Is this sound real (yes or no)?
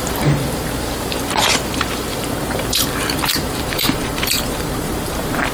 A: no